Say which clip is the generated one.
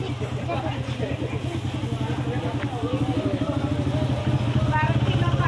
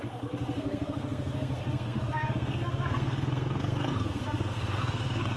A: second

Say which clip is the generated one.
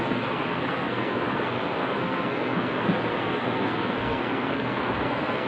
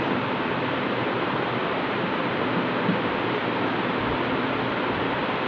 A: first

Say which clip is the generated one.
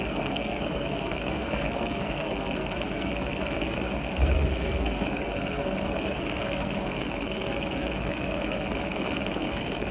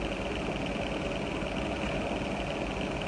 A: first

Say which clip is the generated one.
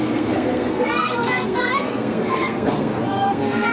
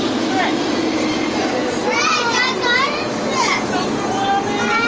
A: first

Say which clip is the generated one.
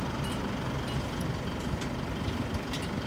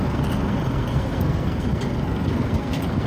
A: second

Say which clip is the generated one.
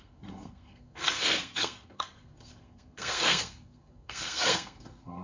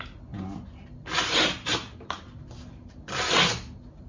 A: first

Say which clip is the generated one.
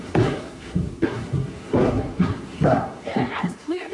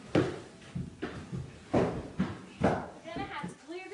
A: first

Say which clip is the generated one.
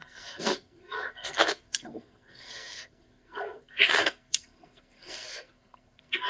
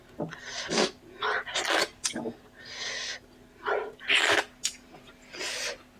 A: first